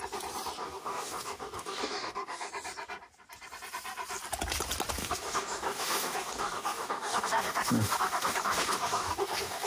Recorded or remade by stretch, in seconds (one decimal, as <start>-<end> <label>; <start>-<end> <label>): 0.0-0.6 recorded; 0.6-2.5 remade; 2.5-5.0 recorded; 5.0-9.7 remade